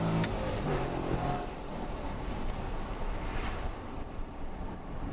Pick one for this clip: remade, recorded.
remade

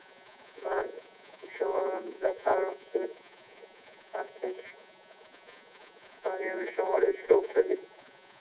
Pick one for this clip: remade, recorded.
remade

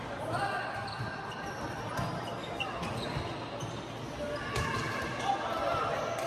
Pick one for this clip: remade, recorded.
recorded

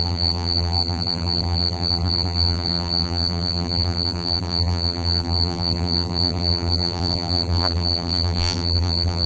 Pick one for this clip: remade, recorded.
remade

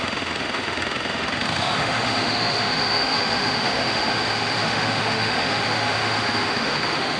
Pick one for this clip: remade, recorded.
remade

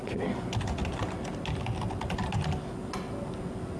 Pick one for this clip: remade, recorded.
recorded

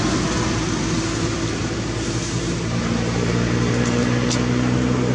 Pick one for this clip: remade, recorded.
recorded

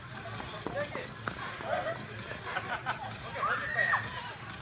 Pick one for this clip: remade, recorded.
recorded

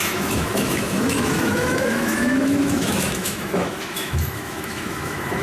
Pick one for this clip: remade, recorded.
remade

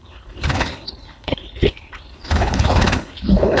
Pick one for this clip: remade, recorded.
remade